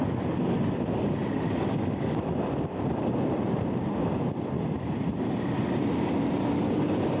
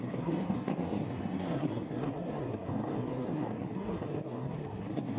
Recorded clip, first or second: first